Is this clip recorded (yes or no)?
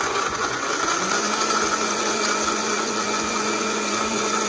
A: no